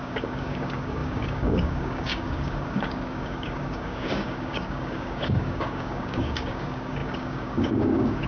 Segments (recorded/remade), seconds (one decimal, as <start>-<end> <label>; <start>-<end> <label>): 0.0-8.3 remade